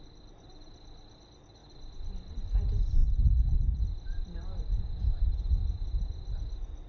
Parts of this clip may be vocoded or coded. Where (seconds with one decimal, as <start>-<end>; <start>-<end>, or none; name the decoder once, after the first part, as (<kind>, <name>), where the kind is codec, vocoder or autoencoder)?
none